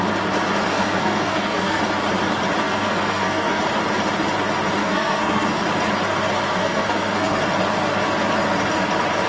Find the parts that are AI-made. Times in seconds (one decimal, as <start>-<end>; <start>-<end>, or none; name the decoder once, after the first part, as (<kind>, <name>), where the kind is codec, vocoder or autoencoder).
0.7-1.8 (codec, SNAC); 2.6-3.6; 4.8-5.6; 6.6-7.4

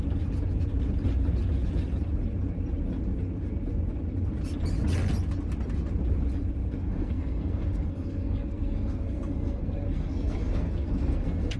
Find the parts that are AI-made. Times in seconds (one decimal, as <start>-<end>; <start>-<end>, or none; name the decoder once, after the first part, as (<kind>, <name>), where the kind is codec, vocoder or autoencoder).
6.6-11.6 (codec, SNAC)

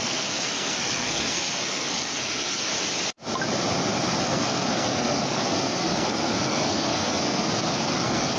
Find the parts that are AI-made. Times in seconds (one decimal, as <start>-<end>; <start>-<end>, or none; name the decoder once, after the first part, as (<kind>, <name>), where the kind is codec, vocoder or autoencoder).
0.0-2.7 (codec, SNAC); 4.2-8.4

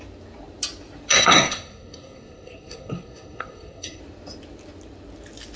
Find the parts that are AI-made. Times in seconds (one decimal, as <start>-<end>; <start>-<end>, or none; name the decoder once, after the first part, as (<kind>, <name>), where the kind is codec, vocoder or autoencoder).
1.1-4.0 (codec, SNAC)